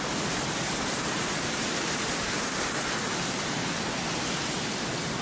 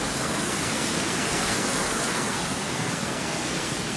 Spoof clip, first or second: second